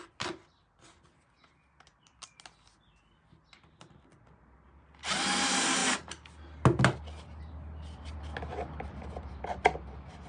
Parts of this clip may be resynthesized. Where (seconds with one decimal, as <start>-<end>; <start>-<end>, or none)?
none

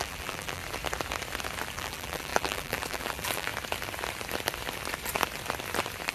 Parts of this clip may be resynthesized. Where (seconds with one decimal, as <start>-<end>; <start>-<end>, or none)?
0.0-0.6; 1.7-3.5

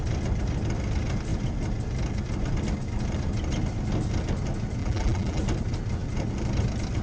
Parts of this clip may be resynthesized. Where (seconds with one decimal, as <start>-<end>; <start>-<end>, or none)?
4.8-5.4

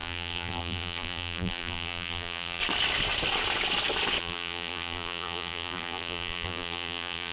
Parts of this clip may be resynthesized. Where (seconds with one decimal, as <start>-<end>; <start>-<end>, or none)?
0.0-2.6; 4.2-7.3

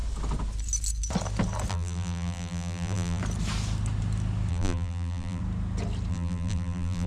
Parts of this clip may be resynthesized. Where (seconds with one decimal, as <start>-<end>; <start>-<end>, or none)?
1.7-3.2; 4.5-5.4; 6.1-7.1

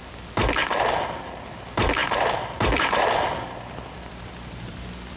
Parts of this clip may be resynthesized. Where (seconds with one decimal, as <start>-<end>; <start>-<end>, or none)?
0.0-0.6; 1.2-5.2